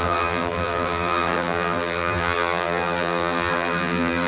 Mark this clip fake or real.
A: fake